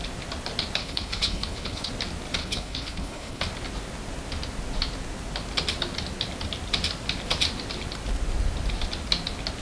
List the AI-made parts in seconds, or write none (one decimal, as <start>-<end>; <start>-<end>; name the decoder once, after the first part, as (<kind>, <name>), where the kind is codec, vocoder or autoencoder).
0.8-1.9 (codec, HILCodec); 2.4-3.4

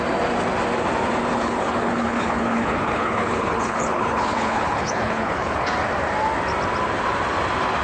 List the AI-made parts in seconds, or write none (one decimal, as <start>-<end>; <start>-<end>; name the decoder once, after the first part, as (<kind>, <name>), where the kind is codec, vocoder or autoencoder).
1.3-5.6 (codec, HILCodec)

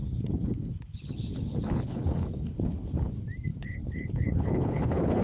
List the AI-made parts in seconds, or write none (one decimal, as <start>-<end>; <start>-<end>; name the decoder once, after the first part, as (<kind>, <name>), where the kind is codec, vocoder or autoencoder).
0.0-3.1 (codec, HILCodec); 3.5-5.2

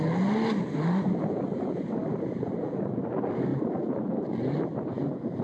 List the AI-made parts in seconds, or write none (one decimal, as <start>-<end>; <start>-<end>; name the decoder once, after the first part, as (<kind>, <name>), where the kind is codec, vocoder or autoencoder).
none